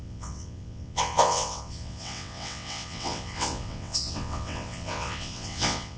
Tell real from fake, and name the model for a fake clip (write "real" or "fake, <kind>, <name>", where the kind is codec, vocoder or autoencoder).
fake, vocoder, WaveNeXt